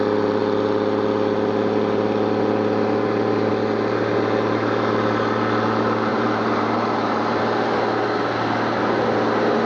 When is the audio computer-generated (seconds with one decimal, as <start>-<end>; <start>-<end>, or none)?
6.1-7.4